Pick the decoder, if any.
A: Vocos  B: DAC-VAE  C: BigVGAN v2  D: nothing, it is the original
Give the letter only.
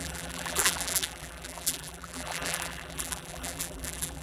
C